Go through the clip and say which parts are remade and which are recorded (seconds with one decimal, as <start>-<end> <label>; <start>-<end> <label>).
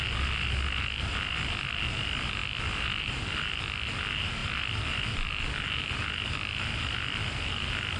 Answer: 0.0-8.0 recorded